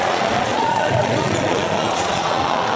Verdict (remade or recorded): remade